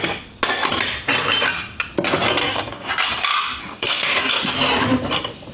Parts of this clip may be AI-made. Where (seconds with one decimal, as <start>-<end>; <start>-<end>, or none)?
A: 2.4-2.9; 3.6-4.5